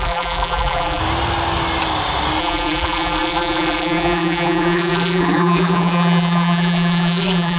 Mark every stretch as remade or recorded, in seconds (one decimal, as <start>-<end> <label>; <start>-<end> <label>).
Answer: 0.0-1.0 remade; 1.0-2.4 recorded; 2.4-7.6 remade